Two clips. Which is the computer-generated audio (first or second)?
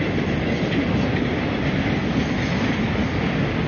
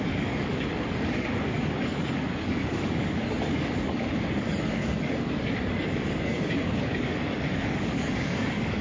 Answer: second